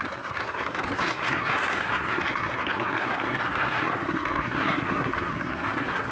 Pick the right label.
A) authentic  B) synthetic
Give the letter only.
B